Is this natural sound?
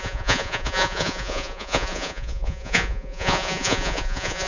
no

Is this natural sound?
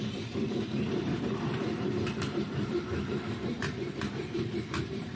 no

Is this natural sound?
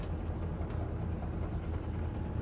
yes